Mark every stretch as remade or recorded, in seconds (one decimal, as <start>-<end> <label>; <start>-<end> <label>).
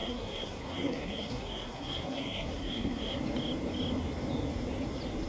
0.0-3.2 remade; 3.2-5.3 recorded